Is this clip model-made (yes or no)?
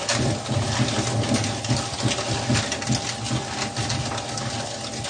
no